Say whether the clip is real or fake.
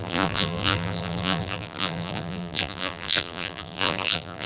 fake